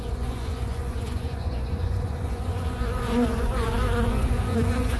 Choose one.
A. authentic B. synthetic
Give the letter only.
B